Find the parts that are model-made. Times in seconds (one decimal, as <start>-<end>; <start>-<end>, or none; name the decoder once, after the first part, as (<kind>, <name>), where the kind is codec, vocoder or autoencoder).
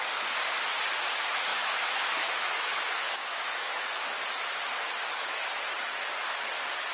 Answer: 1.5-5.6 (autoencoder, DAC-VAE)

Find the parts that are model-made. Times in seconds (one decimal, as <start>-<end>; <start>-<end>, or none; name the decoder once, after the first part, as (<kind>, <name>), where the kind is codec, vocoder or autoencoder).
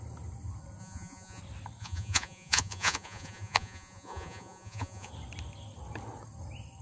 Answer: 0.8-1.4 (vocoder, Vocos); 1.8-5.1